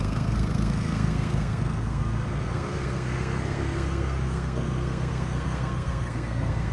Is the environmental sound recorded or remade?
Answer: remade